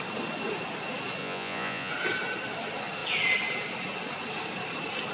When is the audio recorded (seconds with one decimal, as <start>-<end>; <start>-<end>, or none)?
0.0-1.2; 1.9-5.1